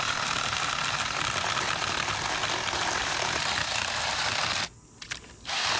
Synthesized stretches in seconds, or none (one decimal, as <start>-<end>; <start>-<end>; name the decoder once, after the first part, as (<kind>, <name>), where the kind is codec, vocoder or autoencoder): 3.0-4.3 (vocoder, BigVGAN v2)